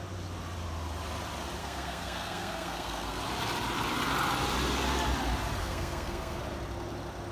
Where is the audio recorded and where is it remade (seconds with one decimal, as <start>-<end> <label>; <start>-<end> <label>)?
0.0-1.6 recorded; 1.6-3.2 remade; 3.2-5.6 recorded; 5.6-6.4 remade; 6.4-7.3 recorded